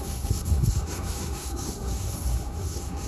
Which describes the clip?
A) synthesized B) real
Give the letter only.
A